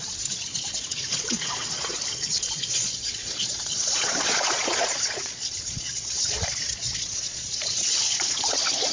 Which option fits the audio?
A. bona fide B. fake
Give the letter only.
B